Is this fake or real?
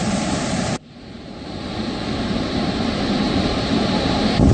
fake